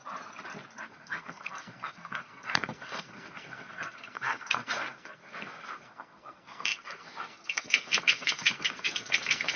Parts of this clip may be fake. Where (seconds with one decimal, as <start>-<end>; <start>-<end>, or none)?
0.8-9.6